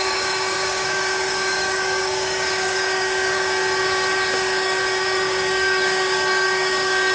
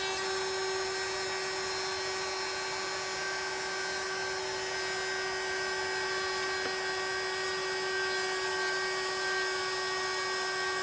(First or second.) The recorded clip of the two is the second